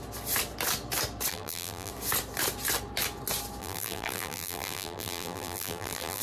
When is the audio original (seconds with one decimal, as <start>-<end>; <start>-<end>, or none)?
0.0-1.3; 1.9-3.6